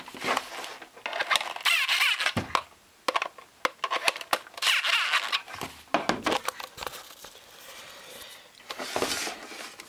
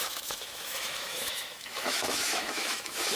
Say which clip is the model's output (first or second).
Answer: second